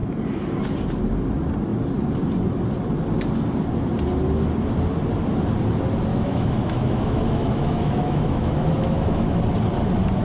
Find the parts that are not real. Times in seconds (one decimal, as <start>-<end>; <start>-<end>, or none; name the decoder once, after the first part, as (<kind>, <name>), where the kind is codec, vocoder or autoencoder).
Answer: 6.1-9.4 (autoencoder, DAC-VAE)